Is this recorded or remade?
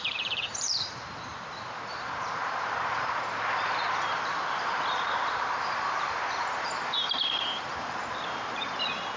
remade